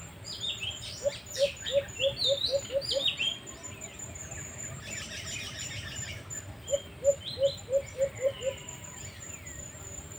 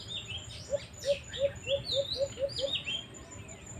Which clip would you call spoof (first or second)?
first